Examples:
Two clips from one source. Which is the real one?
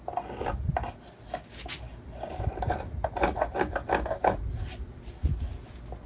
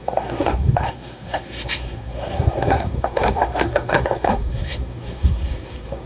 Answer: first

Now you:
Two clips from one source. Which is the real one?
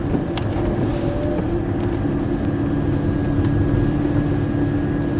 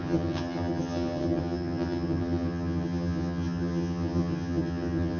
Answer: first